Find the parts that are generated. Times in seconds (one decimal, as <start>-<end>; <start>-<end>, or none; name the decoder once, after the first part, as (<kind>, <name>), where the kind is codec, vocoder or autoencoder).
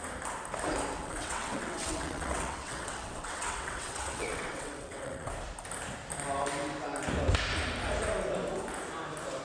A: 1.0-5.3 (vocoder, WaveNeXt)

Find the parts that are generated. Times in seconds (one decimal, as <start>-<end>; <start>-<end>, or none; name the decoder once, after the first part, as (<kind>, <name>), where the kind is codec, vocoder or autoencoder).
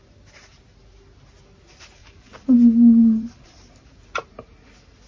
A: 2.0-4.2 (vocoder, BigVGAN v2)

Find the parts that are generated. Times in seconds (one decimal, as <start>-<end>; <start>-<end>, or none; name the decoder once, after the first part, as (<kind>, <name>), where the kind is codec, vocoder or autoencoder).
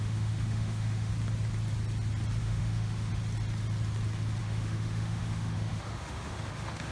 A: 0.0-1.1 (autoencoder, DAC-VAE); 2.4-3.1; 4.4-6.9